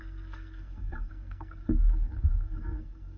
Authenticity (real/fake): fake